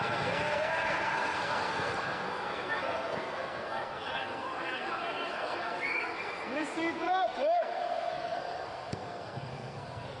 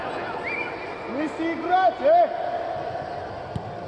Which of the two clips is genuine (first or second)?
second